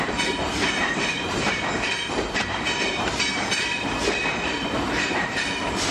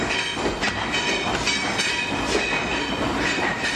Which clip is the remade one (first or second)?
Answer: first